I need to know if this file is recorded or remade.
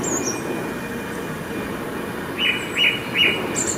recorded